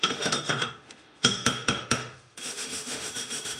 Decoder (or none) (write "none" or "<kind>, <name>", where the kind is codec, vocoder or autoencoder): autoencoder, DAC-VAE